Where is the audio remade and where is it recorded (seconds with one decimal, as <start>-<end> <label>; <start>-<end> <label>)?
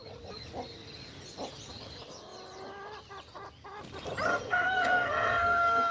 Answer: 0.0-4.3 recorded; 4.3-5.9 remade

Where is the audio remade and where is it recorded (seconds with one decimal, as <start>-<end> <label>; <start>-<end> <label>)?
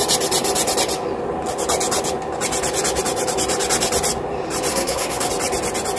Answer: 0.0-4.7 recorded; 4.7-5.3 remade; 5.3-6.0 recorded